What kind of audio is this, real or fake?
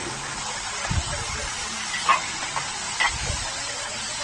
real